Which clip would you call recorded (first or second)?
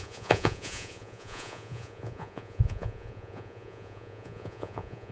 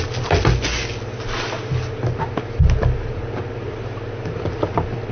second